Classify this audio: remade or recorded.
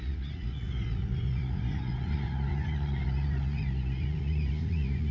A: remade